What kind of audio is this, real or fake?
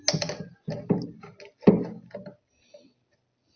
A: real